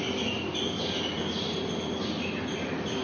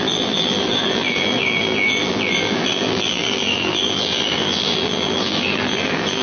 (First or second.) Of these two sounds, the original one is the first